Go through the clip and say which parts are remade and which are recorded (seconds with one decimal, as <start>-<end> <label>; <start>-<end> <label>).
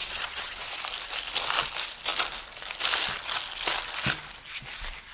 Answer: 0.0-0.8 remade; 0.8-5.1 recorded